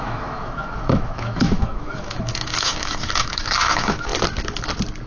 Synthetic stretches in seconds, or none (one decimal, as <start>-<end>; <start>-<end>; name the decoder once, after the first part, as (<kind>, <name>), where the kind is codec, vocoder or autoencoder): 0.0-4.1 (autoencoder, DAC-VAE)